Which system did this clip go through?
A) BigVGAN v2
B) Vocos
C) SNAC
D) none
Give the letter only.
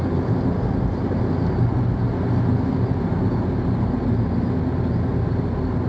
D